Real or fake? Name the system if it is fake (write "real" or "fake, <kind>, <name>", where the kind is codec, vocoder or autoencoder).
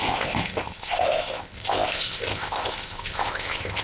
fake, codec, ZipCodec